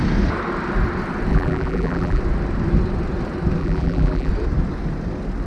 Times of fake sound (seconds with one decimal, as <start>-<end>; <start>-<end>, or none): 1.3-2.2; 3.6-4.3